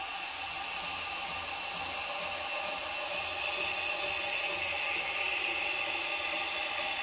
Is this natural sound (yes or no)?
yes